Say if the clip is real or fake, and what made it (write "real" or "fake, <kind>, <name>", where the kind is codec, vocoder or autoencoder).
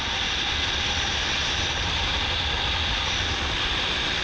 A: real